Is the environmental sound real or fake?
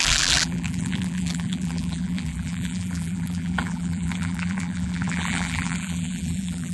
fake